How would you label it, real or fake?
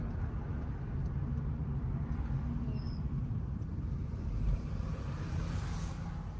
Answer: real